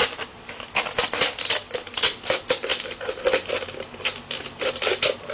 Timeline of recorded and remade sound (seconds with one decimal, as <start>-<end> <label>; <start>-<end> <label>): 0.0-5.3 recorded